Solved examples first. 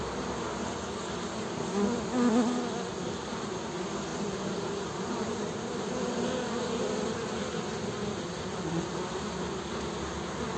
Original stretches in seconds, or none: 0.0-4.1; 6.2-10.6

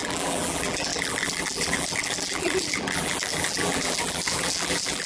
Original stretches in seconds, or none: none

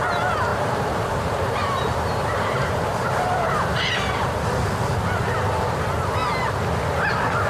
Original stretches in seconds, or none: 0.0-0.5; 3.9-7.5

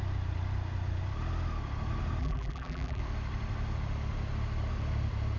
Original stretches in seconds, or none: 0.0-2.2; 3.0-5.4

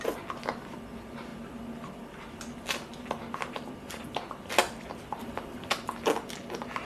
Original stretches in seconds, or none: 0.0-5.2; 5.7-6.8

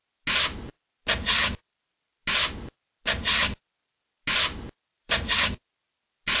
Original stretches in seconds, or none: 0.0-4.9; 5.4-6.4

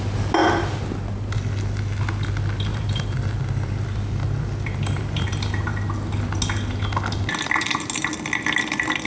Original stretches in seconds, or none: 0.0-2.7; 5.3-9.1